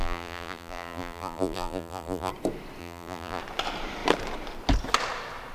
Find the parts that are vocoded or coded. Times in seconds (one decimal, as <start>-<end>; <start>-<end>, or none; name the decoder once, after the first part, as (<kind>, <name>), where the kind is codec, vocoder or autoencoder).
0.0-2.3 (vocoder, BigVGAN v2); 2.8-3.4